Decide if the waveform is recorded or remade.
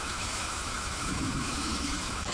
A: remade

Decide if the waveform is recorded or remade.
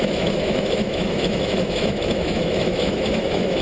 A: remade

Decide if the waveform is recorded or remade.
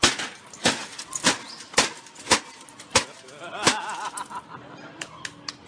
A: recorded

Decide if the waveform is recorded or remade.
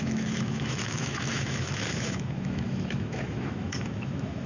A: remade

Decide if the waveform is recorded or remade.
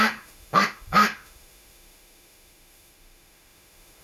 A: remade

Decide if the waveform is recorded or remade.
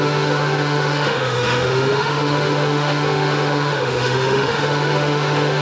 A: remade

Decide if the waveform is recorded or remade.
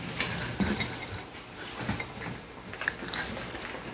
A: recorded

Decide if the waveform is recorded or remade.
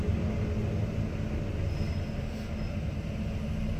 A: recorded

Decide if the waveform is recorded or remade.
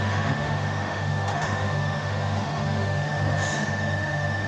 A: remade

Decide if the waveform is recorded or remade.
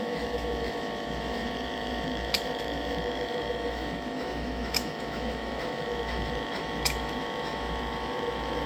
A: remade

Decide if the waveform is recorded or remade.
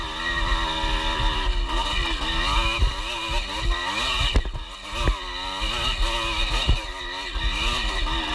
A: recorded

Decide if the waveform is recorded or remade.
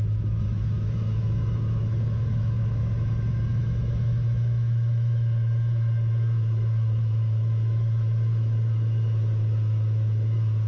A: remade